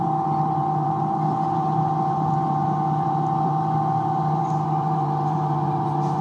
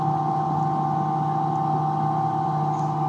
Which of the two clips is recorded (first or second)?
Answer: second